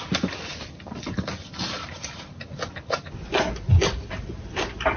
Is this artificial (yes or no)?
no